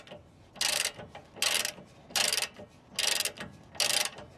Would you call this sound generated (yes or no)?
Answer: no